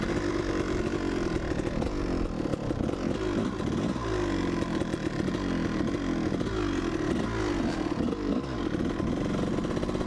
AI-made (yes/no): no